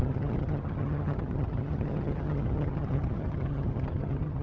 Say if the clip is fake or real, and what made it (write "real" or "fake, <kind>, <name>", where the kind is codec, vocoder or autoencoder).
fake, vocoder, HiFi-GAN